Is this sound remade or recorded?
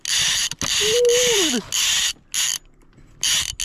recorded